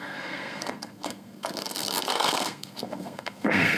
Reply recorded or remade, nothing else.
remade